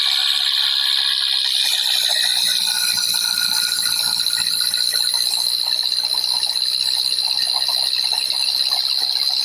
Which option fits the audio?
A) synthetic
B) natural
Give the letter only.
B